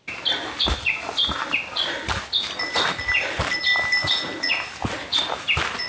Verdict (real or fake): real